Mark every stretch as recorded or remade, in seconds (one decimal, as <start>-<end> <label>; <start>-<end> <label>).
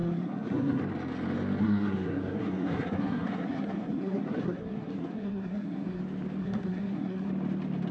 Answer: 0.0-0.8 remade; 0.8-1.6 recorded; 1.6-6.0 remade; 6.0-6.4 recorded; 6.4-7.3 remade; 7.3-7.9 recorded